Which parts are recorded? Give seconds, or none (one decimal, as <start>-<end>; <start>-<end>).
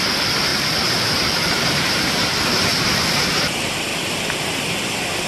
0.0-0.5; 2.8-5.3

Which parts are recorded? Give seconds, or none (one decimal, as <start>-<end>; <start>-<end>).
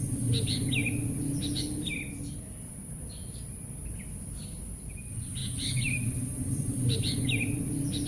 0.0-5.4; 7.6-8.1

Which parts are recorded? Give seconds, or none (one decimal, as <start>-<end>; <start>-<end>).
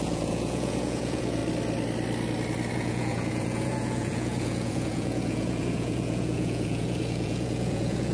1.4-2.7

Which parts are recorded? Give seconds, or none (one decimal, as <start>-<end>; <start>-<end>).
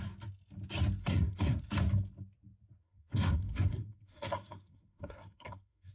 0.0-1.0; 1.6-2.8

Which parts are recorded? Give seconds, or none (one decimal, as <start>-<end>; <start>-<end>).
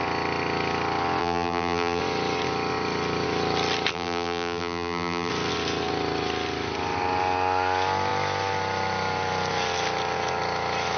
0.0-1.2; 2.0-3.9; 5.3-11.0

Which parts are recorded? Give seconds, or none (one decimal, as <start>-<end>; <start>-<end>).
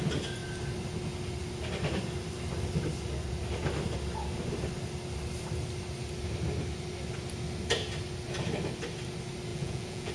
0.0-9.5